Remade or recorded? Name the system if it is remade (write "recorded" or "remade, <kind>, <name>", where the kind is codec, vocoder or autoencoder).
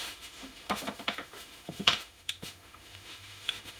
remade, autoencoder, DAC-VAE